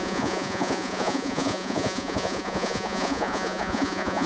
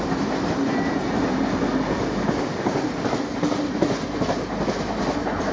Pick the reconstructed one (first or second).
first